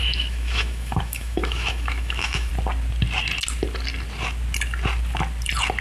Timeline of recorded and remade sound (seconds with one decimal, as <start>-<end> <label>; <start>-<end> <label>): 0.0-2.5 remade; 2.5-5.8 recorded